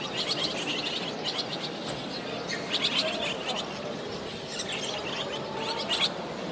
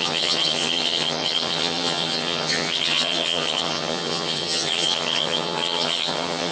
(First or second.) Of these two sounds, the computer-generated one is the second